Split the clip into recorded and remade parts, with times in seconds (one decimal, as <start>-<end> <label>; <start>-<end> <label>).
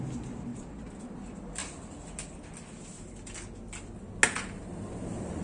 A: 0.0-5.4 recorded